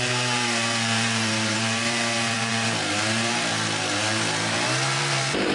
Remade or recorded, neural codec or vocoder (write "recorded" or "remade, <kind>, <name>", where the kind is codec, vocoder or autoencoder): remade, vocoder, BigVGAN v2